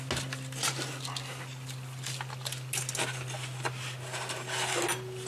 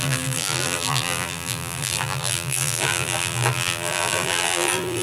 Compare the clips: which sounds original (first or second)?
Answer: first